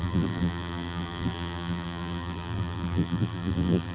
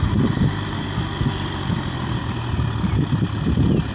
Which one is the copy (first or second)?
first